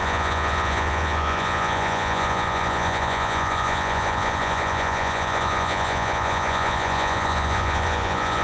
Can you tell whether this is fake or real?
fake